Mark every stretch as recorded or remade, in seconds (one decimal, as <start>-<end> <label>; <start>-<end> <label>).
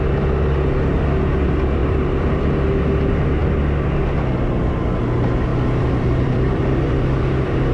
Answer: 0.0-1.8 recorded; 1.8-2.5 remade; 2.5-5.5 recorded; 5.5-7.7 remade